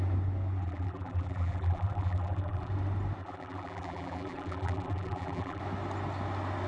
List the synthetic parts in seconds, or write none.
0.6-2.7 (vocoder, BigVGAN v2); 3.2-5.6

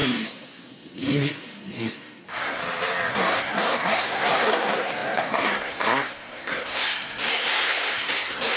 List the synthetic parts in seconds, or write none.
0.0-2.6 (codec, SNAC); 3.1-8.6